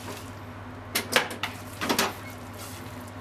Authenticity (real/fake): real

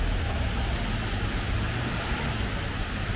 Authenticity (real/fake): real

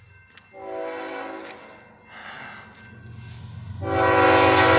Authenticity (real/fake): real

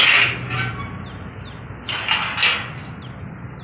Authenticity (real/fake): real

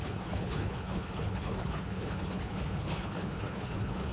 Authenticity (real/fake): fake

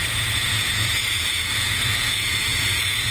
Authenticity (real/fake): fake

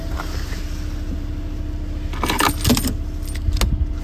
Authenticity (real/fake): real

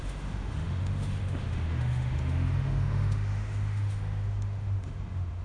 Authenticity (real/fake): fake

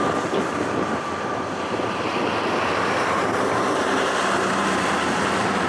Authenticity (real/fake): real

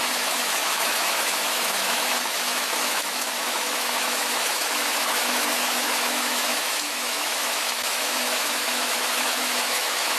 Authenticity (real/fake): fake